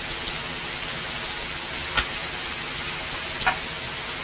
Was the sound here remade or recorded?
recorded